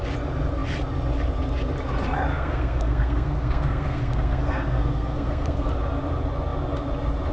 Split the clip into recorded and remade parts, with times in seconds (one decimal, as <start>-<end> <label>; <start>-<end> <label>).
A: 0.0-2.3 recorded; 2.3-5.7 remade; 5.7-7.3 recorded